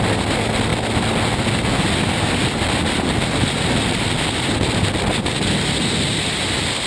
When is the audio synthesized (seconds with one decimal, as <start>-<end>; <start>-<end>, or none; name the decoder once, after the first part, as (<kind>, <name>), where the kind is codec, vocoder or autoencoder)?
none